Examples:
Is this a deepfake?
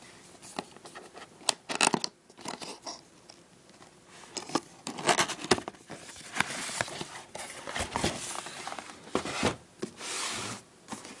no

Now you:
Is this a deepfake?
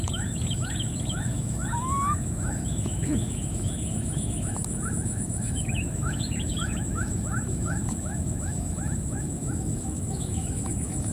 yes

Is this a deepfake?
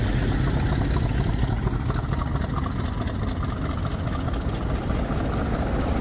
no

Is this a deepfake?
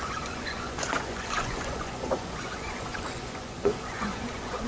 yes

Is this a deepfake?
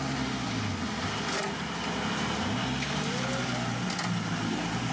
no